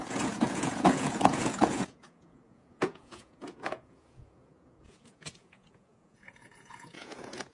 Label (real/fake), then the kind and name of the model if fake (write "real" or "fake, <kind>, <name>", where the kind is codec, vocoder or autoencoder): fake, vocoder, Vocos